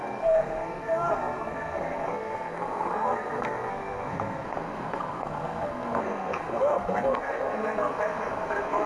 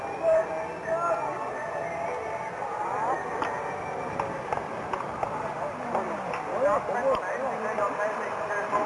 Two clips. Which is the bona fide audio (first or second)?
second